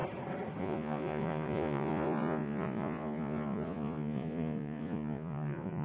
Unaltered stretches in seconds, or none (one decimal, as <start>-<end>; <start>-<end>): 0.0-0.6